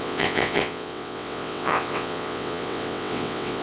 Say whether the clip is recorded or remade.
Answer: remade